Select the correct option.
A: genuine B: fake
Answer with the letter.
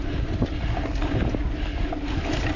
A